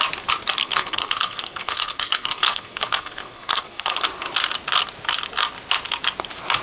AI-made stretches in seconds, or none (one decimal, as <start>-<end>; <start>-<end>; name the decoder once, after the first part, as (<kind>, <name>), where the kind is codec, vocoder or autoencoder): 0.6-4.0 (codec, SNAC)